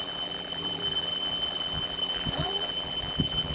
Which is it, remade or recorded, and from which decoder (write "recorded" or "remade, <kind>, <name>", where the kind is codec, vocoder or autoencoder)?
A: remade, vocoder, BigVGAN v2